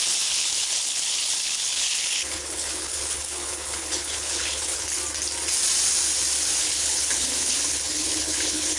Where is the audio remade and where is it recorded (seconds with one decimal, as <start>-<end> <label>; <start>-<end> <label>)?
0.0-5.0 remade; 5.0-6.6 recorded; 6.6-8.8 remade